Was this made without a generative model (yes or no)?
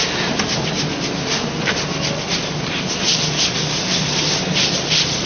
yes